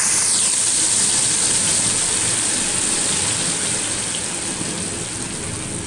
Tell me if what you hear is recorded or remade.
recorded